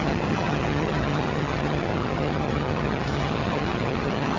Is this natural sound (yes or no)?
no